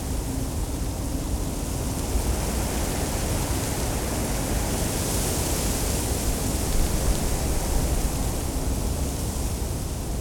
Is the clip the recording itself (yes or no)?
yes